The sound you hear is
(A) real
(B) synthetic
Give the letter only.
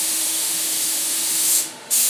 B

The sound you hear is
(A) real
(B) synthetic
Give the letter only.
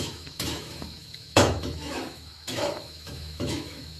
B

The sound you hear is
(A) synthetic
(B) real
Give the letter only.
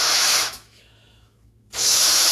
A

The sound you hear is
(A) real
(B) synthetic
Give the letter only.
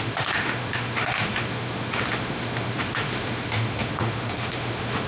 B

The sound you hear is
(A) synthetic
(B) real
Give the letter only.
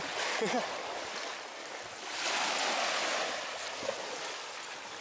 B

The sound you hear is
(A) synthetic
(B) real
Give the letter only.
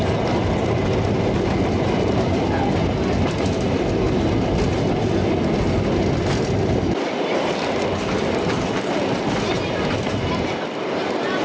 B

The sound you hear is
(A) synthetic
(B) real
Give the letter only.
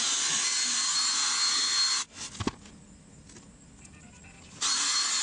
B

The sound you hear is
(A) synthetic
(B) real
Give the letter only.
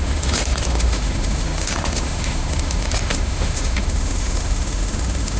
A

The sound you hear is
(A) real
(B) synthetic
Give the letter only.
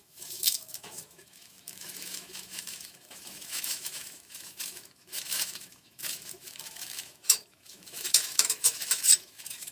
B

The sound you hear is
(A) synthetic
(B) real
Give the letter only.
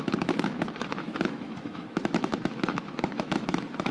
A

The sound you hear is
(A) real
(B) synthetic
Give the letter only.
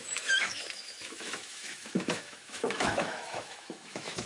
B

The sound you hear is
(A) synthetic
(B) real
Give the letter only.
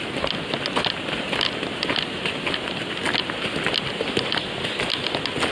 B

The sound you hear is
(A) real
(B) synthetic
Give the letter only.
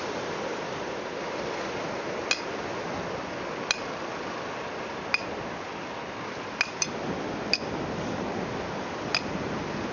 A